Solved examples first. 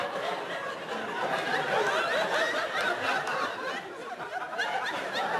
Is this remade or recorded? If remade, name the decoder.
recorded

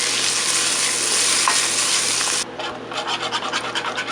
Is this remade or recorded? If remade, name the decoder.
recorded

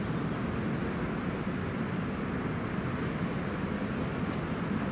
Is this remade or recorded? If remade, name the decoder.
recorded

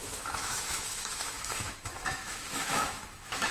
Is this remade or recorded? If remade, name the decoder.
remade, autoencoder, DAC-VAE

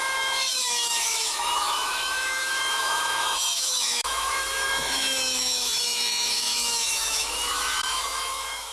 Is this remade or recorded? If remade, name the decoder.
remade, autoencoder, DAC-VAE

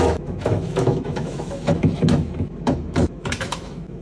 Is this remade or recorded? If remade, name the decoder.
remade, autoencoder, DAC-VAE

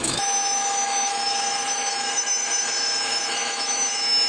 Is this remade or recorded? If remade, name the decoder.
remade, autoencoder, DAC-VAE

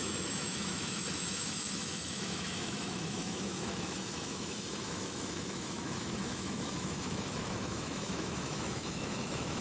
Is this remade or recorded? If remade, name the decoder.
remade, autoencoder, DAC-VAE